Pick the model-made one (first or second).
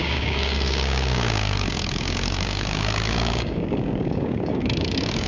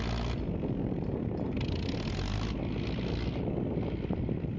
first